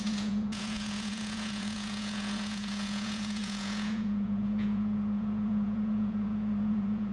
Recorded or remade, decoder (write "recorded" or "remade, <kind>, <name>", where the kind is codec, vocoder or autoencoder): remade, vocoder, Vocos